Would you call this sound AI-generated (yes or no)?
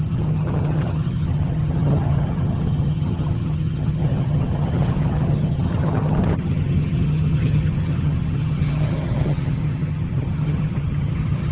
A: yes